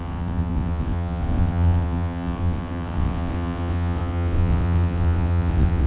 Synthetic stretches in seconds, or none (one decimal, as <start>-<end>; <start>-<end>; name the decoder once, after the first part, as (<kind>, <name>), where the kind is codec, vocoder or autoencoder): 0.0-5.9 (vocoder, WaveNeXt)